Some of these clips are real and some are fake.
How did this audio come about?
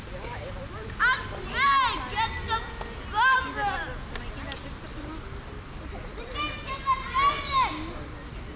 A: real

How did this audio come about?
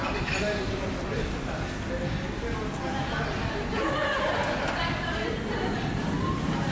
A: real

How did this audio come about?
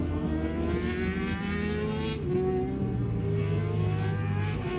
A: real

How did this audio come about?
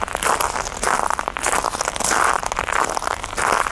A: real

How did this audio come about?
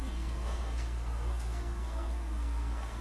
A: fake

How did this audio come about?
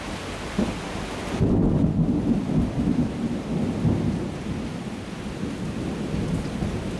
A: real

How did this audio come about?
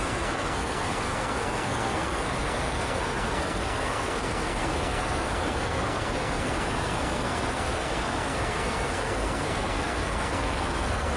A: fake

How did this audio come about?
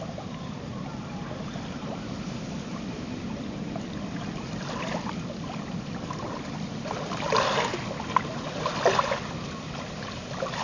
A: real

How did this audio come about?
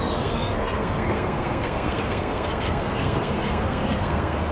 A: fake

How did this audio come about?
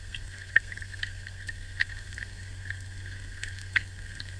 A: fake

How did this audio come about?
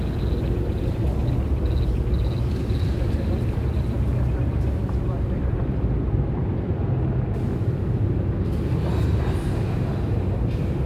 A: real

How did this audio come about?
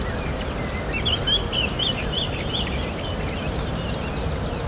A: real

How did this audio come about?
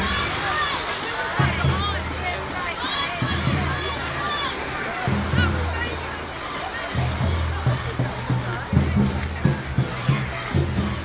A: real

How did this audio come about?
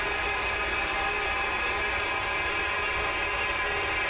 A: real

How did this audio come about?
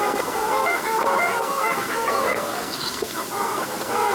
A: fake